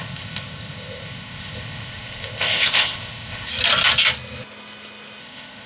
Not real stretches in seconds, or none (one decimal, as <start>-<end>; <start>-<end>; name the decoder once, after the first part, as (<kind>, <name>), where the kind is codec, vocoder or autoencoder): 0.0-3.5 (codec, ZipCodec); 5.2-5.7